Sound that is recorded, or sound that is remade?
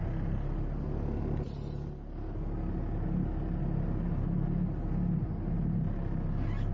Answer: recorded